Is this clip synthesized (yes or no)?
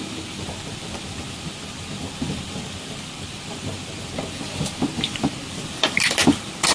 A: yes